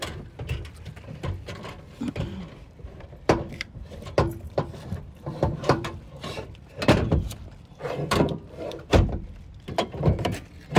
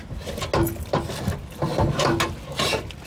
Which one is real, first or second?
second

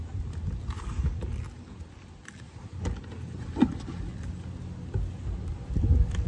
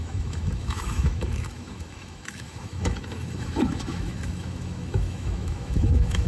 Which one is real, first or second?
first